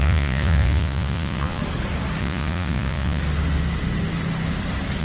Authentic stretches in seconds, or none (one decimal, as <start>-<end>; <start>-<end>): 1.6-2.2; 3.2-5.0